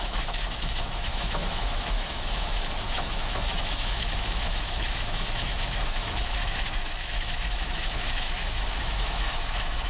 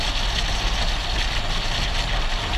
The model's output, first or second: first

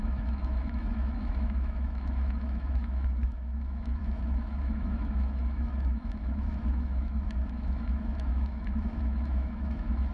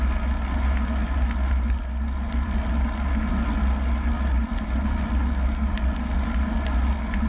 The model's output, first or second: first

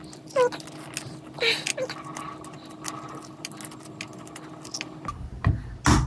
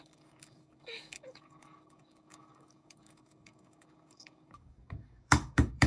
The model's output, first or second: second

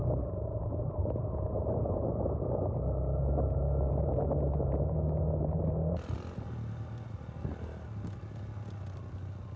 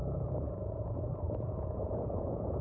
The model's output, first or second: second